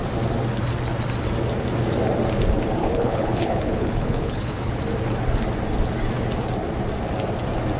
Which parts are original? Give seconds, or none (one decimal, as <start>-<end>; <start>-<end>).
0.0-2.8; 4.8-7.8